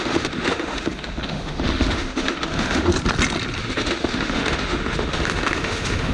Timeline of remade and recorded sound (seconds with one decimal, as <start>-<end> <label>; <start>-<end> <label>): 0.0-2.9 remade; 2.9-3.6 recorded; 3.6-6.1 remade